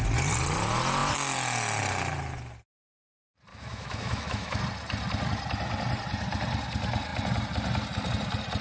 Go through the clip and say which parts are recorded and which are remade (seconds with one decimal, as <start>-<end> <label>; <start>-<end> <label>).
0.0-3.5 recorded; 3.5-4.6 remade; 4.6-8.6 recorded

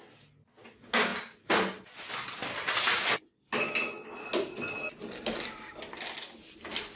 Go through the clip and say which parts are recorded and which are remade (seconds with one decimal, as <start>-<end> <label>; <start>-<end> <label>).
0.0-7.0 recorded

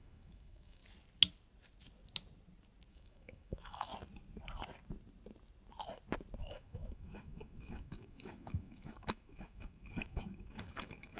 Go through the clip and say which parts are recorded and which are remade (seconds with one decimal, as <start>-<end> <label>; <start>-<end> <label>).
0.0-0.8 remade; 0.8-2.9 recorded; 2.9-3.9 remade; 3.9-6.4 recorded; 6.4-11.2 remade

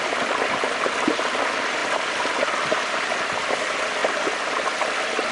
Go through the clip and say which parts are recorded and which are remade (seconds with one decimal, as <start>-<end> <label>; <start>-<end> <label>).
0.0-5.3 recorded

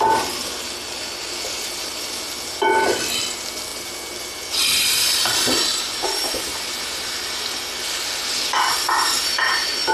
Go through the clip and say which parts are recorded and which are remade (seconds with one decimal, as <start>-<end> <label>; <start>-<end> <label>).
0.0-3.7 recorded; 3.7-7.1 remade; 7.1-9.9 recorded

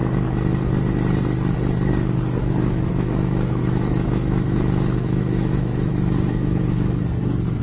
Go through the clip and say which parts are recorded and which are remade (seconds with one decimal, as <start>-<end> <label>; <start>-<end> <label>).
0.0-2.4 recorded; 2.4-7.0 remade; 7.0-7.6 recorded

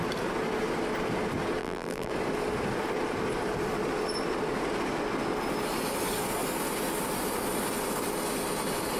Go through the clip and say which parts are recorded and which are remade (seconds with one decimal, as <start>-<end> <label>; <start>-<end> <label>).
0.0-1.6 recorded; 1.6-2.1 remade; 2.1-9.0 recorded